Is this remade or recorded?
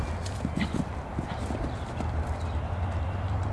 recorded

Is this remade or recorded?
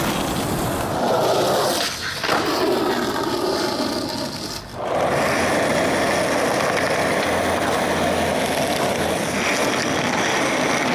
recorded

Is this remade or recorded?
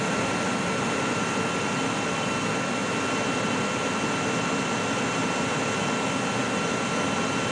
recorded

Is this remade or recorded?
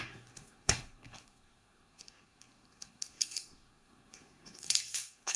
remade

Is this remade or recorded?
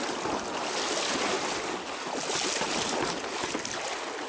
recorded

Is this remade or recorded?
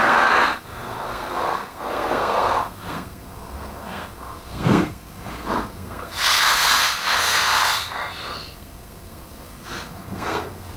remade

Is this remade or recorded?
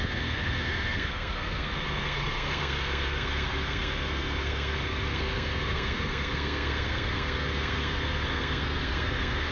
remade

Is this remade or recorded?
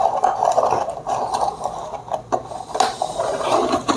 recorded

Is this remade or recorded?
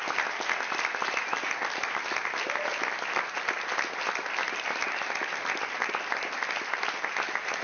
recorded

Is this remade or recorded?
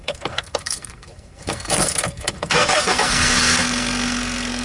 remade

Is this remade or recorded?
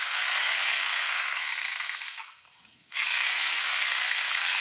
remade